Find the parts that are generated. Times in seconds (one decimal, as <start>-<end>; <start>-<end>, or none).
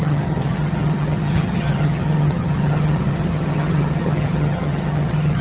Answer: 0.0-5.4